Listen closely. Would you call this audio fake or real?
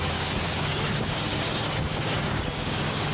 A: fake